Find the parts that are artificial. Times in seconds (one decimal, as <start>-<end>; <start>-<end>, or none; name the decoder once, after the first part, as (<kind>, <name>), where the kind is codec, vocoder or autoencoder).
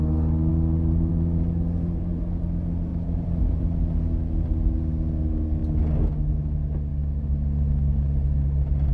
2.9-3.6 (vocoder, BigVGAN v2)